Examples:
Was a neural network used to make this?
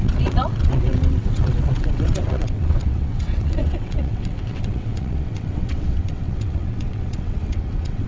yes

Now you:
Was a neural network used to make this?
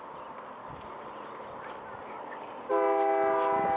no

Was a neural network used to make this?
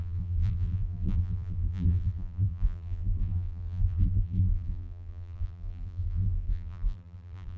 yes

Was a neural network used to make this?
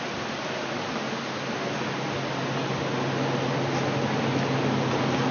no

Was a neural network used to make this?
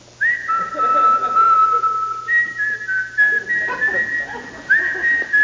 no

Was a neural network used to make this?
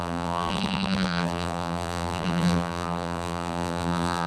yes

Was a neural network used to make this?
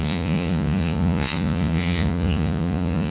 yes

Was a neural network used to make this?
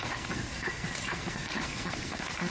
yes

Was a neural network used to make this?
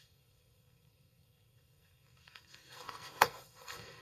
yes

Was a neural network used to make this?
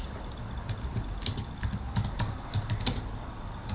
no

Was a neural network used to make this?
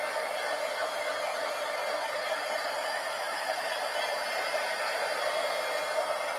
no